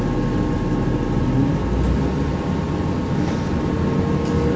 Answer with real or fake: real